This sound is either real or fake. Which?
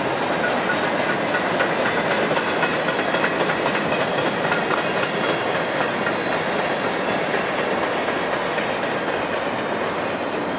real